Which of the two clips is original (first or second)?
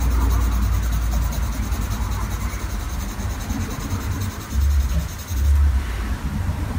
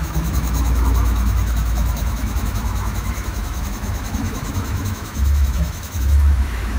first